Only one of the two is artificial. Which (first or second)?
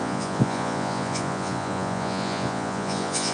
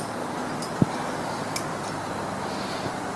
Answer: first